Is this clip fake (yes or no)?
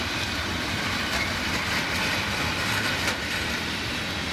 yes